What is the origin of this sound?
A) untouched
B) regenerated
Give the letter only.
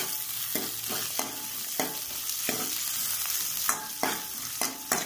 A